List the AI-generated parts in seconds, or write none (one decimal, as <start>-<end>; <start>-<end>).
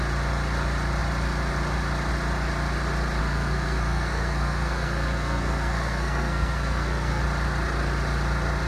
3.2-7.2